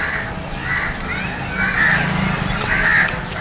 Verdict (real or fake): real